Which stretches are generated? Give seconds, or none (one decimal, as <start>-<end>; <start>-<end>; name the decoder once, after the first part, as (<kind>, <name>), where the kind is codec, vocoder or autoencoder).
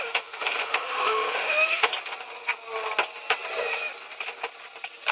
0.0-1.9 (autoencoder, DAC-VAE)